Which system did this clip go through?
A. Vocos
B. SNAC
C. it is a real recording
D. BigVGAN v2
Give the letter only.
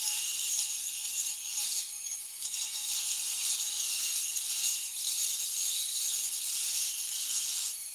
B